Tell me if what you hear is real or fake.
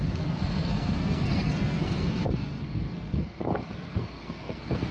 fake